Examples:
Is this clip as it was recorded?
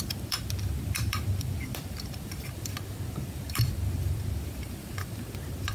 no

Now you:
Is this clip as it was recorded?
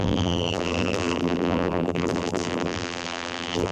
no